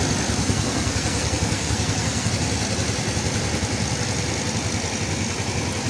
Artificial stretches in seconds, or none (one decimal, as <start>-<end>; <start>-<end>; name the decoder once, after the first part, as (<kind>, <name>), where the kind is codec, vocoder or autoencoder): 0.4-2.3 (codec, SNAC)